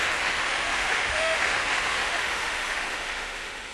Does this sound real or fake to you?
fake